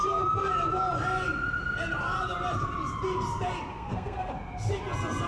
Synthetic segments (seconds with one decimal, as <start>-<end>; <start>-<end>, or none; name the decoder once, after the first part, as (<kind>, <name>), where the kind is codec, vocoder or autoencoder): 3.7-4.3 (codec, SNAC)